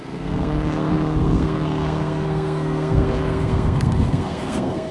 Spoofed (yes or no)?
yes